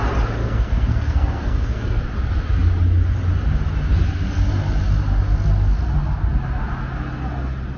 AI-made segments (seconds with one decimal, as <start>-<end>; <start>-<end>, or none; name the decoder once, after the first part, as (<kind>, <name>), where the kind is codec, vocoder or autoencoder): 0.4-2.0 (codec, SNAC)